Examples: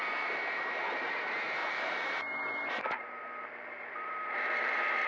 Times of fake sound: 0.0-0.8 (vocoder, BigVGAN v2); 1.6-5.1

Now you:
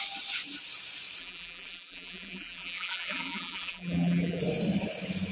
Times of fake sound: 1.2-4.4 (vocoder, BigVGAN v2)

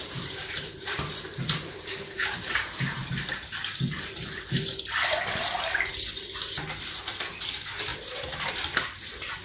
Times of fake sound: 0.0-3.0 (vocoder, BigVGAN v2); 7.5-9.4